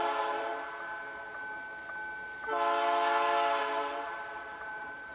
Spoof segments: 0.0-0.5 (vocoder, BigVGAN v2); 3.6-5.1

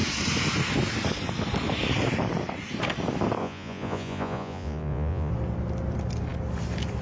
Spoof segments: 3.4-5.3 (vocoder, Vocos)

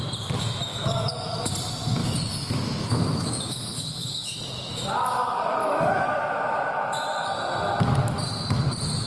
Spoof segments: 0.7-1.5 (autoencoder, DAC-VAE); 2.0-4.9; 5.6-7.3